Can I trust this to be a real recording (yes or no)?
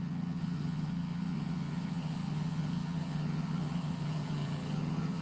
no